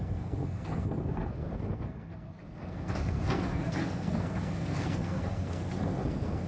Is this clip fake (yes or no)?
yes